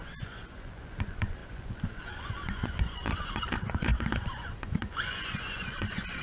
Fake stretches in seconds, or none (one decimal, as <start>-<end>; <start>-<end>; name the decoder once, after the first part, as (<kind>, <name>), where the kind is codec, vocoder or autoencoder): 0.0-6.2 (vocoder, Vocos)